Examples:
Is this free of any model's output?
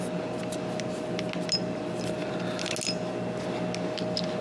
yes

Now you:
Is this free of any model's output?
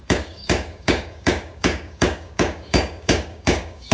no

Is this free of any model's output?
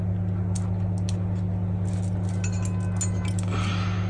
yes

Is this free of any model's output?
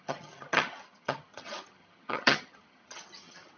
no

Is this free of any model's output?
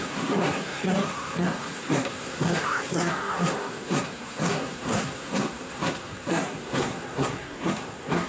no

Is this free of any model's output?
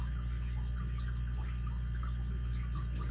yes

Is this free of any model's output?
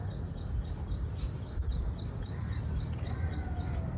yes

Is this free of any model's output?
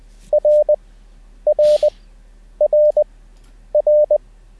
yes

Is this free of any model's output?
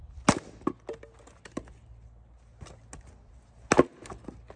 yes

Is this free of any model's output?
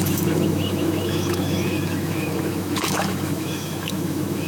no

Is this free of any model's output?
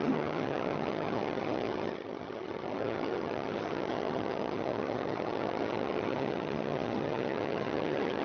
no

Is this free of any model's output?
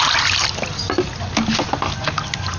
yes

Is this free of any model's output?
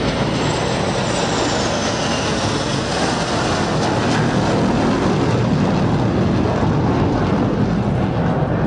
yes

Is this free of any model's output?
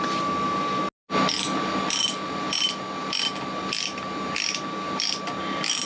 yes